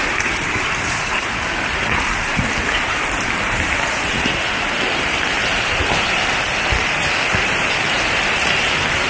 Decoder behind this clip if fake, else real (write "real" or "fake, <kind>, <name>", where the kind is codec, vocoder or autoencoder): fake, vocoder, BigVGAN v2